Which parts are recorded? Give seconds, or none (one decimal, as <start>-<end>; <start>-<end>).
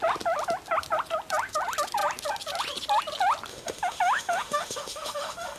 0.0-3.5